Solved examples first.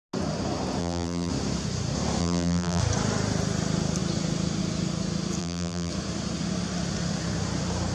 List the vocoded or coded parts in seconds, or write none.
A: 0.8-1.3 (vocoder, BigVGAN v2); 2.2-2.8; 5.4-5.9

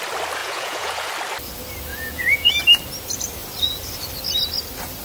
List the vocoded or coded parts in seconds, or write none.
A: 0.4-1.1 (vocoder, Vocos); 1.9-2.5

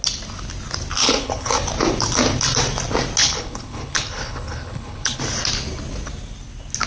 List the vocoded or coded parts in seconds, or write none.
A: 1.0-1.6 (codec, HILCodec); 3.2-5.2

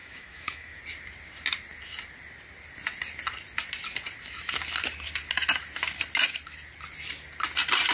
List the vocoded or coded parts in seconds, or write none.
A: 0.0-0.8 (autoencoder, DAC-VAE)

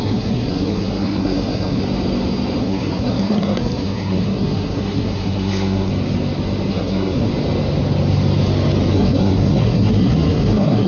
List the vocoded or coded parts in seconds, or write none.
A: 0.0-1.8 (codec, SNAC); 2.6-5.9; 6.7-7.3; 8.9-10.9

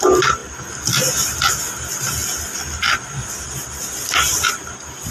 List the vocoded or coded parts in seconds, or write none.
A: none

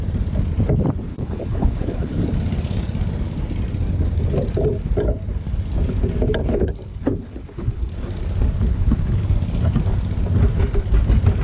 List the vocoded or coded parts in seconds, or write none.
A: 1.1-2.2 (codec, HILCodec); 6.4-7.9; 8.7-9.2

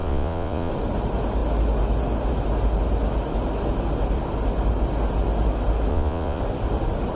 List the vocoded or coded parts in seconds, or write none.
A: 0.0-0.7 (vocoder, Vocos); 5.9-6.4